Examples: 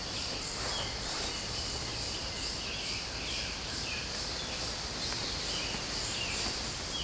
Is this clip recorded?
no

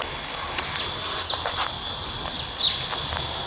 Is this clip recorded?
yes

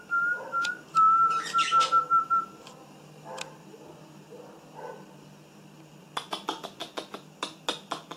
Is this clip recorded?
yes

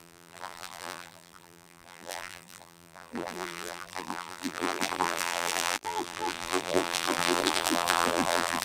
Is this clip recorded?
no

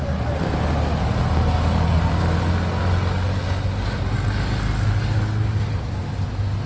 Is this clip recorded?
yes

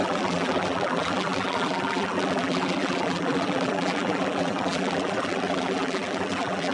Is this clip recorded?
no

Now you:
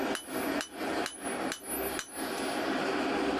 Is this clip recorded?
yes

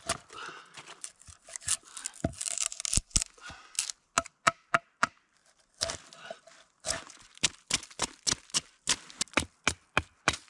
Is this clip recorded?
yes